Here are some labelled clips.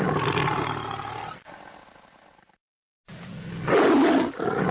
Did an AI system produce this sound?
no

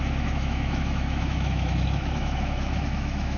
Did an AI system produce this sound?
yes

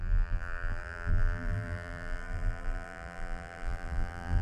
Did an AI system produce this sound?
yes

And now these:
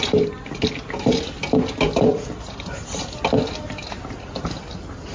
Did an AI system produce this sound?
no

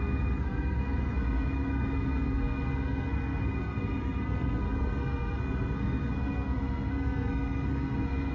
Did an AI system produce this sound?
yes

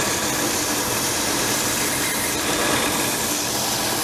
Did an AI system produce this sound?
no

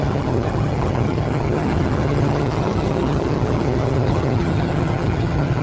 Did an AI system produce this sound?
yes